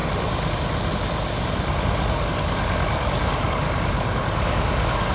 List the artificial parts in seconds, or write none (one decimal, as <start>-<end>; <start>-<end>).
2.2-5.1